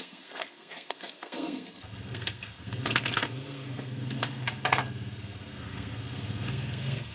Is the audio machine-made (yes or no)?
yes